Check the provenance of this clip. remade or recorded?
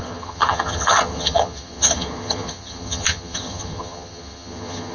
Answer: remade